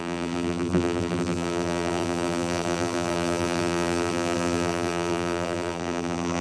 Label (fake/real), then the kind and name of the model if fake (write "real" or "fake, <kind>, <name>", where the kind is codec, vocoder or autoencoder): fake, vocoder, BigVGAN v2